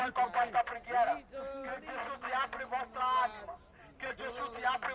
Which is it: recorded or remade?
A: recorded